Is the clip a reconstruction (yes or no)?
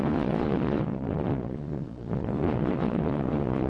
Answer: yes